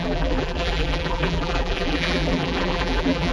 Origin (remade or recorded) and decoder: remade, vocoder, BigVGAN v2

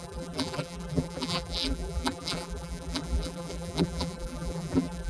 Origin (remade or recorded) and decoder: remade, vocoder, BigVGAN v2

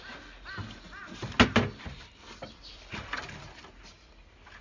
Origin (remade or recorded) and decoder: recorded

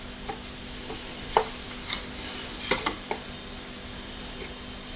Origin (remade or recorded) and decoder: remade, vocoder, BigVGAN v2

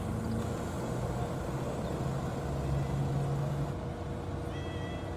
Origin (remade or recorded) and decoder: recorded